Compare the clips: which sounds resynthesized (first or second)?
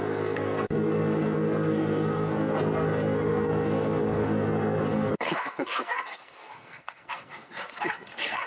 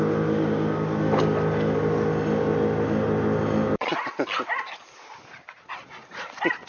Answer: first